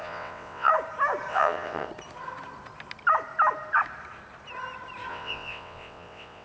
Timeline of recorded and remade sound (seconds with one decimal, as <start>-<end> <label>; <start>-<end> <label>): 0.0-0.7 remade; 0.7-1.3 recorded; 1.3-1.9 remade; 1.9-5.1 recorded; 5.1-6.4 remade